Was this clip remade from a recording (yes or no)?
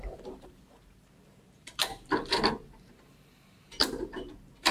yes